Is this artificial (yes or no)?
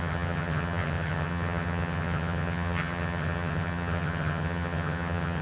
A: yes